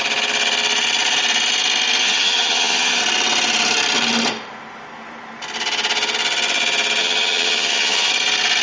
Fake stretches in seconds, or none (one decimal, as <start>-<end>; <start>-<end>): 2.0-3.0; 7.0-8.1